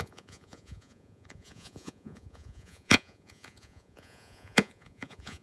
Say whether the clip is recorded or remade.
remade